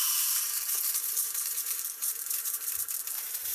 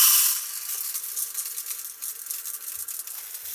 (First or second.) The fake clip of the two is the first